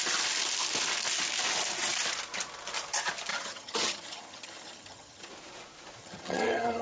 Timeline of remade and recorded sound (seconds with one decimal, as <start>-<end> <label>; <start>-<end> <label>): 0.0-3.3 recorded; 3.3-5.3 remade; 5.3-6.0 recorded; 6.0-6.8 remade